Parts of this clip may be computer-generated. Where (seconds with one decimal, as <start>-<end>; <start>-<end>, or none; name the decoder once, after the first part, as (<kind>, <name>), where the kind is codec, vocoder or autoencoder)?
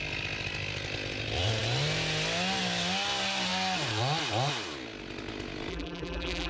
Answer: 5.7-6.5 (vocoder, BigVGAN v2)